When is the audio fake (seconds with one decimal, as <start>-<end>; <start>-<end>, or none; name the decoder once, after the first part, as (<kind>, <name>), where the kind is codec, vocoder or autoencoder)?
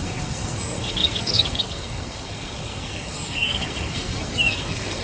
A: 0.0-5.0 (codec, SNAC)